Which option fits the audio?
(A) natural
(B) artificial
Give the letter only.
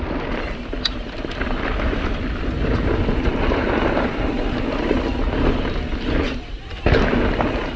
A